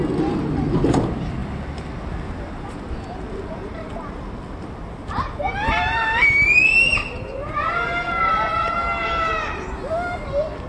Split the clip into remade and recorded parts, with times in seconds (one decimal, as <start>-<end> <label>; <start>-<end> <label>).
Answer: 0.0-7.4 recorded; 7.4-8.7 remade; 8.7-10.7 recorded